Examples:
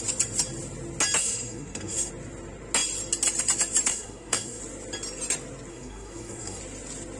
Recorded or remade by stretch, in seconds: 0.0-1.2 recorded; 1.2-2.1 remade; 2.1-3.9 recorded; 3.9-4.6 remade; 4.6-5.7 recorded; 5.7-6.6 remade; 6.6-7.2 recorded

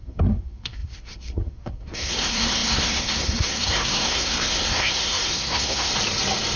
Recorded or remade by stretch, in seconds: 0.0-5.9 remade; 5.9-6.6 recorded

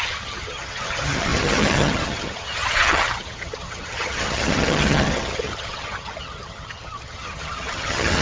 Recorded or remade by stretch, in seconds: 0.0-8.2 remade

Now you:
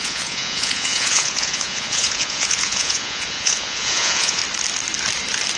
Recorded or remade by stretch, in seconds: 0.0-4.4 remade; 4.4-5.6 recorded